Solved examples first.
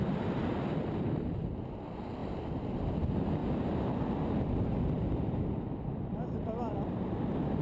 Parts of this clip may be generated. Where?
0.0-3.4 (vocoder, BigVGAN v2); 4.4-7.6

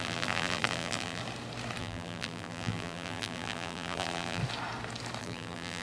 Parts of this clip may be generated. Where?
0.0-1.2 (vocoder, BigVGAN v2); 1.8-4.4; 5.2-5.8

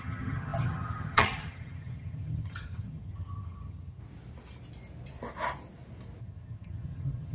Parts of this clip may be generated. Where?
0.0-4.0 (vocoder, HiFi-GAN); 6.2-7.3